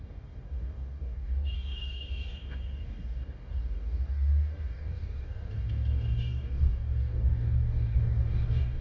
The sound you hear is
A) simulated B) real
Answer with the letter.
A